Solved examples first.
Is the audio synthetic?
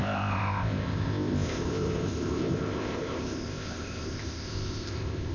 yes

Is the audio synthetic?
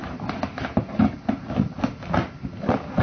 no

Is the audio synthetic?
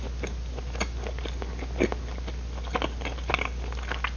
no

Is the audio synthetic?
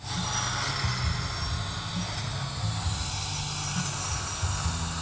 no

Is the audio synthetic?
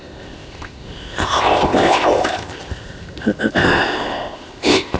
yes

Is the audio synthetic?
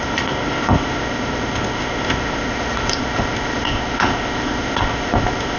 yes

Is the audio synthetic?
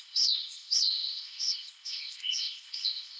yes